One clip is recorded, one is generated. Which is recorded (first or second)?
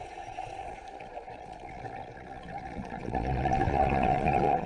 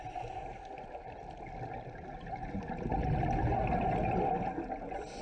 second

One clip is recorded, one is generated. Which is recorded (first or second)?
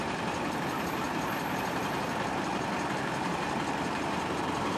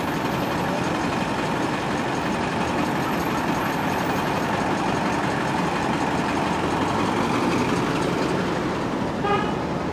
second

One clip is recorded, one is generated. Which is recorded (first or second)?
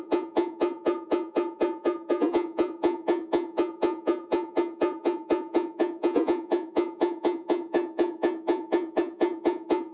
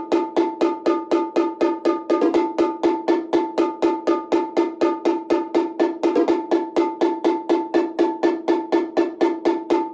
second